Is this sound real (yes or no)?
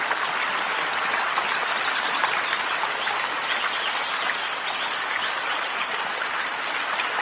yes